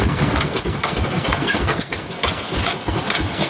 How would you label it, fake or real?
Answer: fake